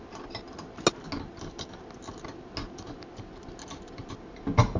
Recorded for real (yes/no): yes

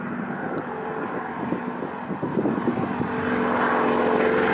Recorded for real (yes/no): yes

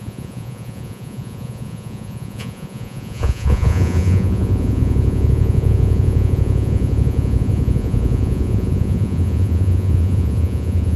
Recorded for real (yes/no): no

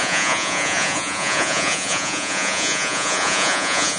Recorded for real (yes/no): no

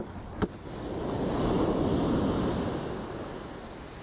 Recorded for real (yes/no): yes